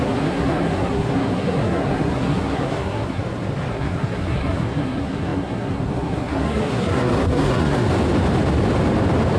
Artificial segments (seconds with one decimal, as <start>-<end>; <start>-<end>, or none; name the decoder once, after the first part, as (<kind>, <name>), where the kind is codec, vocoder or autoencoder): 0.0-3.2 (codec, SNAC); 3.7-7.9